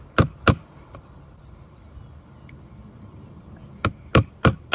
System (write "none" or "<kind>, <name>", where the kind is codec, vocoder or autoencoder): none